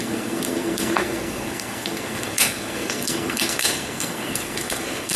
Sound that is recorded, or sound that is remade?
remade